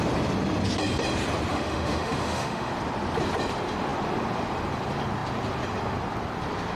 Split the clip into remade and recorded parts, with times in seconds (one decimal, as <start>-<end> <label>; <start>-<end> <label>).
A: 0.0-1.5 recorded; 1.5-2.7 remade; 2.7-6.8 recorded